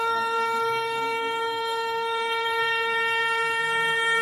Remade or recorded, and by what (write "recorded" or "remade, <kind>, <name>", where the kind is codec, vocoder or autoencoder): remade, codec, SNAC